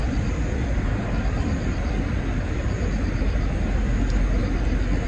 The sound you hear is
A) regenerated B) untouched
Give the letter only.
B